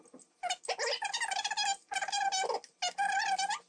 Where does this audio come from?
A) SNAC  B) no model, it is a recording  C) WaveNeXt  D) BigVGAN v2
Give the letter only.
B